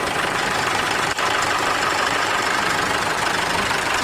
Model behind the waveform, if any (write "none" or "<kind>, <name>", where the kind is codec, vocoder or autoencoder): vocoder, BigVGAN v2